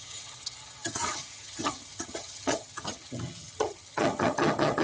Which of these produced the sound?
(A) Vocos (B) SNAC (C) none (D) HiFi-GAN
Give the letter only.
D